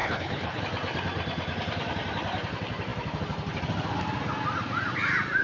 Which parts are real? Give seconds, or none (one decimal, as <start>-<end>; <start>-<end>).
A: 0.6-5.4